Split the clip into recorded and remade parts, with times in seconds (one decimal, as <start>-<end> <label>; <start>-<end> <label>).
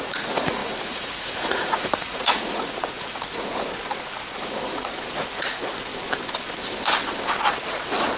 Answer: 0.0-5.9 remade; 5.9-7.4 recorded; 7.4-8.2 remade